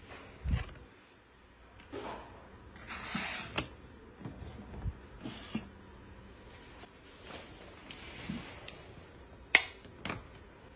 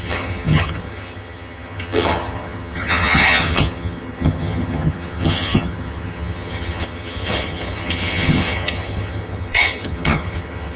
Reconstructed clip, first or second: second